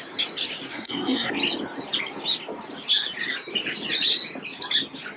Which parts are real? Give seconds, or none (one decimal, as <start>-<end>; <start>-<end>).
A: 0.0-0.7; 1.3-5.2